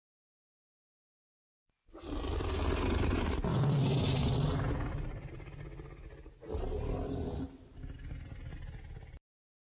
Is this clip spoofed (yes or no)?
no